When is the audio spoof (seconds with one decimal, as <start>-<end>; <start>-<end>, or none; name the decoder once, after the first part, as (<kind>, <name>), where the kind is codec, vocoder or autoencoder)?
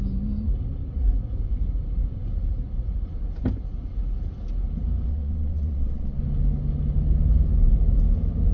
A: 5.1-6.2 (vocoder, WaveNeXt)